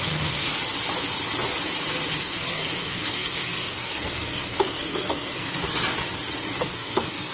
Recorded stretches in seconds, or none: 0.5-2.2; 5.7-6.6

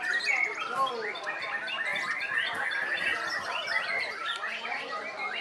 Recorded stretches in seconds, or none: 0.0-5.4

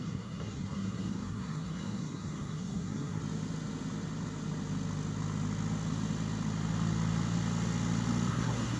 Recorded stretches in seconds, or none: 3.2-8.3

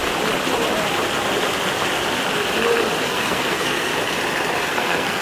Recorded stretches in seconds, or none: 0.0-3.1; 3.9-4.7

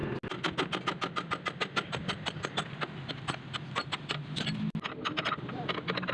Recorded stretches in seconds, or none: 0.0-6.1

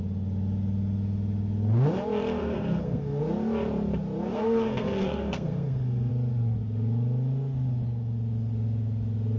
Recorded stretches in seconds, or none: 0.0-2.4; 3.2-4.3; 6.1-9.4

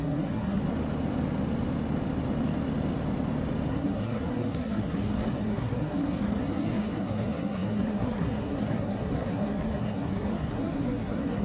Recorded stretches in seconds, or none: 0.6-3.7

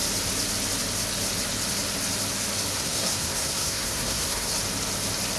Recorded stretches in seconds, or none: 0.0-2.8; 4.5-5.4